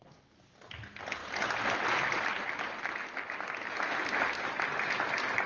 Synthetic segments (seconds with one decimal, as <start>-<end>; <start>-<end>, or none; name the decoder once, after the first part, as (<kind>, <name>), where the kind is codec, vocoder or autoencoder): none

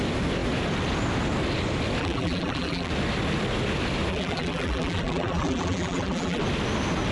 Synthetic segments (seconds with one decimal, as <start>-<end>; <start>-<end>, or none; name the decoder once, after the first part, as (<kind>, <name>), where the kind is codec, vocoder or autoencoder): 2.0-2.9 (vocoder, BigVGAN v2); 4.1-6.4

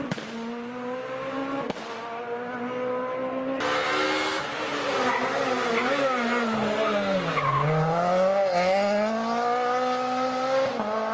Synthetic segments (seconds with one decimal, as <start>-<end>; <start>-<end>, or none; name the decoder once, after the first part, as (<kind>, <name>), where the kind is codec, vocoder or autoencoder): none

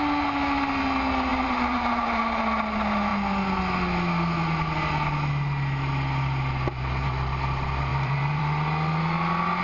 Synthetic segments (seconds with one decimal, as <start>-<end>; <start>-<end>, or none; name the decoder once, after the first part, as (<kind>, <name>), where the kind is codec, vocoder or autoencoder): 1.3-2.4 (vocoder, BigVGAN v2); 7.9-8.4

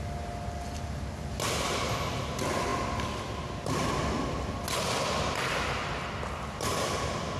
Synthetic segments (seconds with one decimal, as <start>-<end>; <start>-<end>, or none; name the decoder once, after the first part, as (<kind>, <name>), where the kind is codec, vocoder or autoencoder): none

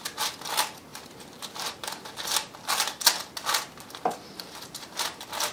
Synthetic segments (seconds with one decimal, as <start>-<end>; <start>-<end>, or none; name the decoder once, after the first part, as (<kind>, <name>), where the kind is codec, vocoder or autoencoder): 0.9-2.0 (vocoder, BigVGAN v2)

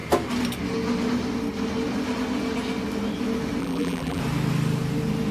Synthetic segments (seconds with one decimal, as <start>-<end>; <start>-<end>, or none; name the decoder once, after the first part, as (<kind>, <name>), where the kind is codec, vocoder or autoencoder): 3.6-4.2 (vocoder, BigVGAN v2)